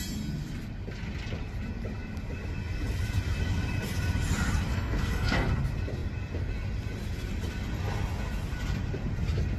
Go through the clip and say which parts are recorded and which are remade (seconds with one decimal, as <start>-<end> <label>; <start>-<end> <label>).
0.0-4.7 recorded; 4.7-5.5 remade; 5.5-9.6 recorded